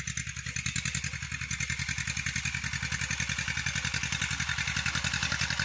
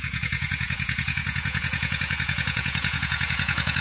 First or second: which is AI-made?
second